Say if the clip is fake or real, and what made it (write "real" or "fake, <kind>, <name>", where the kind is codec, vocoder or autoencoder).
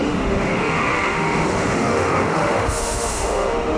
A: fake, autoencoder, DAC-VAE